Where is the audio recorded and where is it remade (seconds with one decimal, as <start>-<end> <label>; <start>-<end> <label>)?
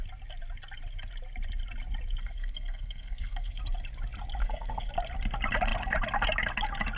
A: 0.0-2.2 recorded; 2.2-3.6 remade; 3.6-4.4 recorded; 4.4-4.9 remade; 4.9-7.0 recorded